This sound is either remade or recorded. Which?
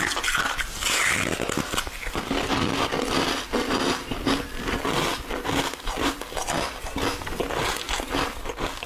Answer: recorded